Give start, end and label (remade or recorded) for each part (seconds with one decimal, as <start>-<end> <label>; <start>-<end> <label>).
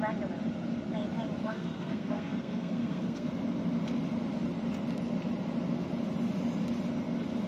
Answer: 0.0-1.4 recorded; 1.4-3.3 remade; 3.3-7.5 recorded